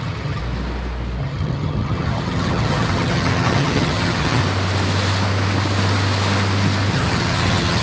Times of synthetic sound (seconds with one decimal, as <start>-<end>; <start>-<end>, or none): 0.0-0.4; 1.2-4.4; 6.9-7.8